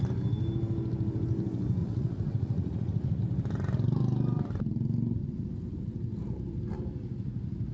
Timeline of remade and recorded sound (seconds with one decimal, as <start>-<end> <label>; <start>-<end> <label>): 0.0-1.8 recorded; 1.8-3.2 remade; 3.2-7.7 recorded